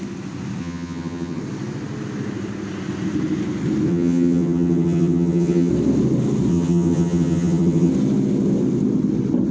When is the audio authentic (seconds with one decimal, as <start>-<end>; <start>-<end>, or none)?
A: 0.0-0.6; 1.4-3.9; 5.7-6.5; 7.9-9.5